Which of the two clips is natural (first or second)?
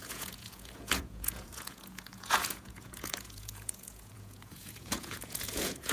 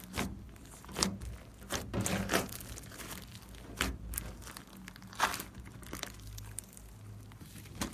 second